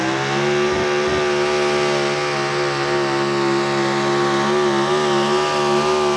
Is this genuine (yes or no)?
yes